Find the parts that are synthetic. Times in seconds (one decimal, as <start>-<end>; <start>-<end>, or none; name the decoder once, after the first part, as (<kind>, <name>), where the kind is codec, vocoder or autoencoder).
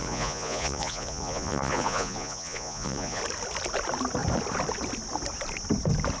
0.0-3.2 (vocoder, Vocos)